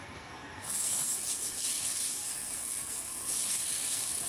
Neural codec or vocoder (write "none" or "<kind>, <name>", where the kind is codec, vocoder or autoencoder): codec, SNAC